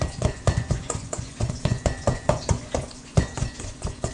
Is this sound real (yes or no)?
no